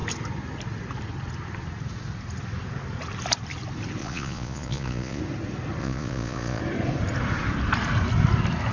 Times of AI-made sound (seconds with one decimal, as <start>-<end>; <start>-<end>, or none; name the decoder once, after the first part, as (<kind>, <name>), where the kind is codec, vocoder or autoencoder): 4.0-5.2 (vocoder, Vocos); 5.8-6.6